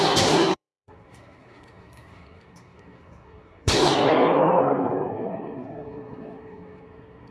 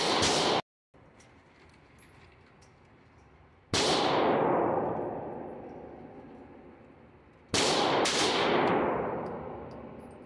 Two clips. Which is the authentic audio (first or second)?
second